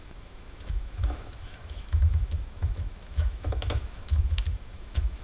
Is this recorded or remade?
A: remade